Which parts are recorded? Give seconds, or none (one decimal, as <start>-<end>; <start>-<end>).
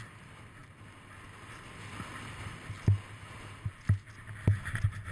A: 0.0-5.1